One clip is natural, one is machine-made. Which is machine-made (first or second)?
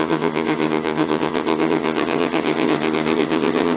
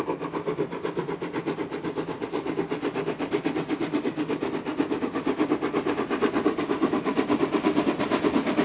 first